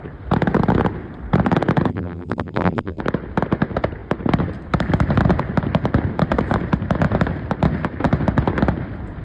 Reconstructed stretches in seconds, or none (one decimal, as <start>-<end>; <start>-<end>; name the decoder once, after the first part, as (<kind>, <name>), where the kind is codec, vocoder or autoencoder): 1.9-3.0 (vocoder, BigVGAN v2)